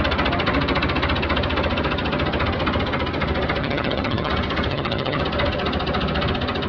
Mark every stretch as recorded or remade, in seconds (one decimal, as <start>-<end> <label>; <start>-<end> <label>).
0.0-3.6 recorded; 3.6-4.3 remade; 4.3-4.7 recorded; 4.7-5.2 remade; 5.2-6.7 recorded